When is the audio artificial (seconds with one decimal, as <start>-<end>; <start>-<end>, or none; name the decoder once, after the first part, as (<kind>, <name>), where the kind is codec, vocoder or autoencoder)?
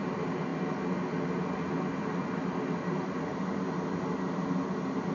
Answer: none